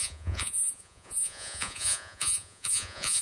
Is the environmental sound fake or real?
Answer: fake